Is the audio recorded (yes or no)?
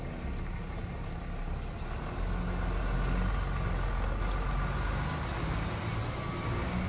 yes